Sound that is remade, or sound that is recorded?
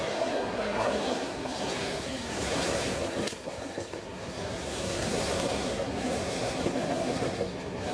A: remade